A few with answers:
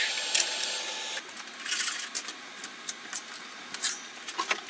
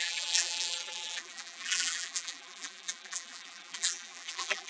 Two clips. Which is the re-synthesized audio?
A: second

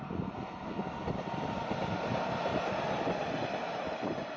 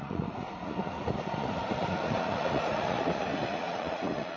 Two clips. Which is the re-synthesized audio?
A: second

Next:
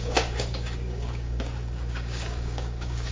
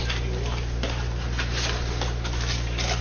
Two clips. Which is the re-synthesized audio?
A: first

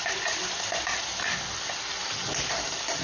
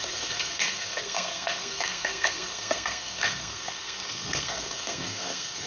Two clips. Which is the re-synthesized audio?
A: second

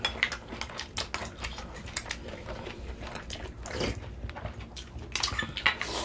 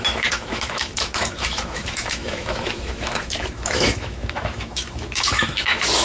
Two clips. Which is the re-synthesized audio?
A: second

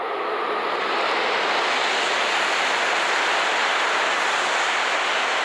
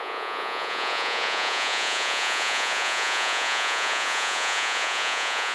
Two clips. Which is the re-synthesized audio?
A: second